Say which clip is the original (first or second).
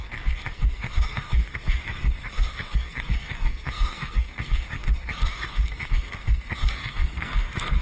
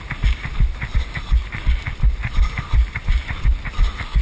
second